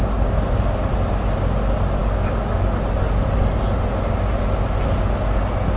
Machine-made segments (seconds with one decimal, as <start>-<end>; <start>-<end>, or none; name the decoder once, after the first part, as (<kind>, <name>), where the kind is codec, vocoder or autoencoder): none